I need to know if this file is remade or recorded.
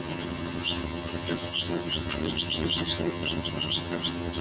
remade